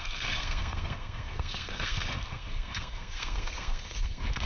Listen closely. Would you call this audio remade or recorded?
remade